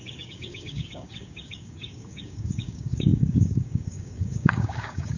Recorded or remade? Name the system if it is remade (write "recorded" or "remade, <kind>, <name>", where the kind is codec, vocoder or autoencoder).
remade, codec, DAC